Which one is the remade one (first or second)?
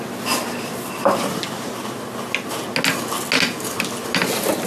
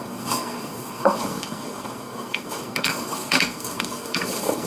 second